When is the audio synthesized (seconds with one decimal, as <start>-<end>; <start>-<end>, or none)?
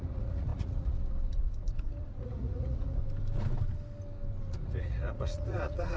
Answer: 0.0-3.0; 4.5-6.0